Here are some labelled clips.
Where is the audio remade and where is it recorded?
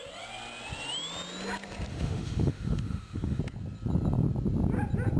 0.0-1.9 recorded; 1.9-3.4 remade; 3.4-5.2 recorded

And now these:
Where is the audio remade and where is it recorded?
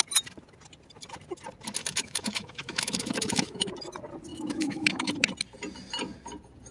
0.0-1.8 recorded; 1.8-3.7 remade; 3.7-4.3 recorded; 4.3-5.1 remade; 5.1-6.7 recorded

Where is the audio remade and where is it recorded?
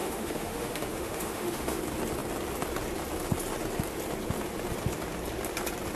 0.0-1.8 remade; 1.8-6.0 recorded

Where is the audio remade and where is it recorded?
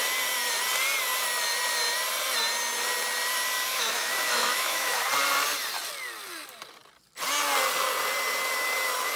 0.0-3.7 recorded; 3.7-5.0 remade; 5.0-9.2 recorded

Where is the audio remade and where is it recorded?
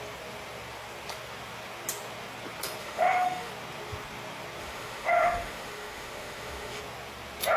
0.0-2.8 recorded; 2.8-3.5 remade; 3.5-4.6 recorded; 4.6-6.8 remade; 6.8-7.6 recorded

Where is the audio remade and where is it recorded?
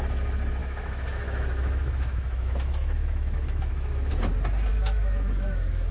0.0-0.6 recorded; 0.6-4.1 remade; 4.1-4.7 recorded; 4.7-5.9 remade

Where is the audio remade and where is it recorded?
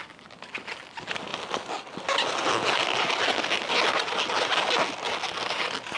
0.0-6.0 recorded